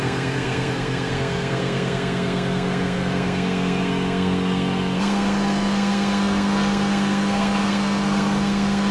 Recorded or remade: remade